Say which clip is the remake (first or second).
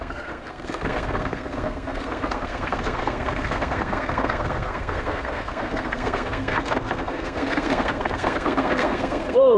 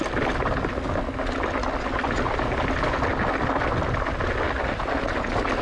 first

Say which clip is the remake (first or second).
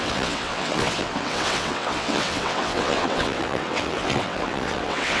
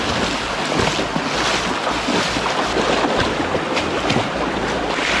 first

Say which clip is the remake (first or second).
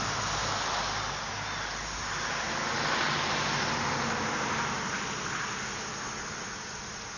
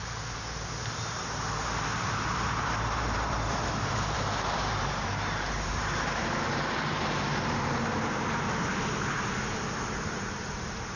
second